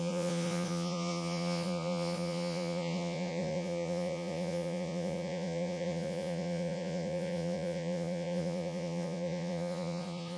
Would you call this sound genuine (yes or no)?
no